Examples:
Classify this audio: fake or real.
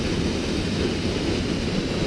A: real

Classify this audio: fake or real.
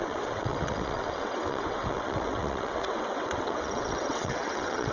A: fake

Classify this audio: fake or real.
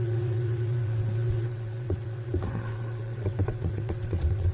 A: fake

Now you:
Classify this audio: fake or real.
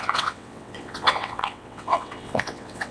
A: fake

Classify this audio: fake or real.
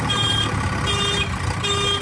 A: real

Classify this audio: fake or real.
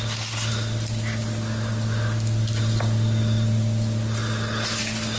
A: real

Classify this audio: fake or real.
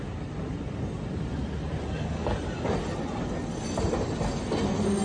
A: real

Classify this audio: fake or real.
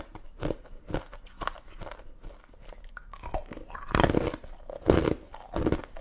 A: real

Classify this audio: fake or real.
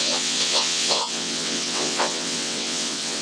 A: fake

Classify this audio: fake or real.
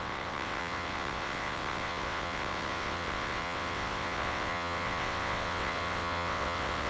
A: fake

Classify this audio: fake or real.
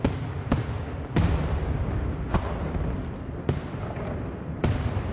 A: real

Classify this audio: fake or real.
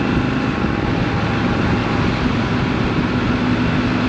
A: real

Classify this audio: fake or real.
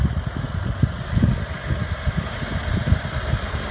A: real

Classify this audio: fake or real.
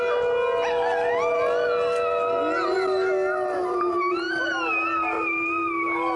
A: real